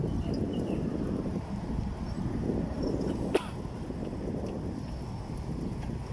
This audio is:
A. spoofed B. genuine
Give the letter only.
B